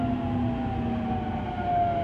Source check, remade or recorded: recorded